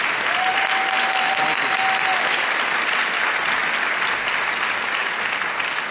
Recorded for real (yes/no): yes